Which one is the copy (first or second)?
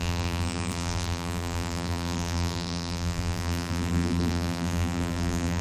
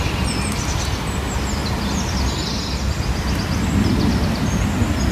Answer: first